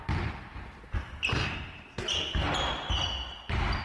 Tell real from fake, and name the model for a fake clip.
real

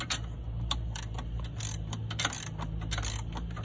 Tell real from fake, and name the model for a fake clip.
real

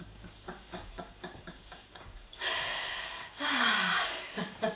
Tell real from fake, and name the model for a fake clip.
fake, codec, DAC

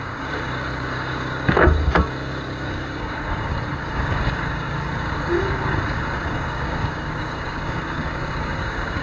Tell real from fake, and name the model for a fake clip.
fake, codec, DAC